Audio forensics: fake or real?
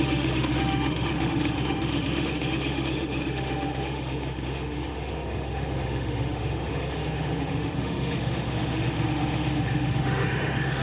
fake